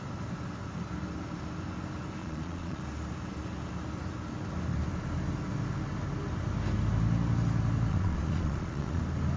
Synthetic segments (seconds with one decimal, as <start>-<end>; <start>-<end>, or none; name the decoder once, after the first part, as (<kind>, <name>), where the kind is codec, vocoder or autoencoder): 2.2-2.8 (vocoder, Vocos); 7.9-9.0